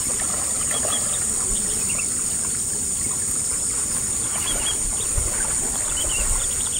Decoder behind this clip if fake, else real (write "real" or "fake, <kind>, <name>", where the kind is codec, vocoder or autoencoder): real